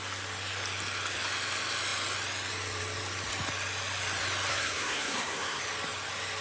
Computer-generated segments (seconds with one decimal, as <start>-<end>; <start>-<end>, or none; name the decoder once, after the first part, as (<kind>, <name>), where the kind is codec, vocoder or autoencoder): 4.5-5.6 (codec, SNAC)